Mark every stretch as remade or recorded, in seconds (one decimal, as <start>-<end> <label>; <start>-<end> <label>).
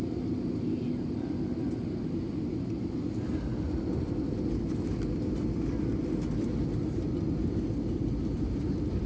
0.0-9.1 recorded